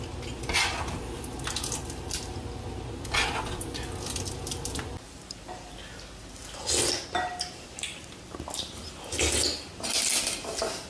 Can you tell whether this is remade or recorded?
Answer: recorded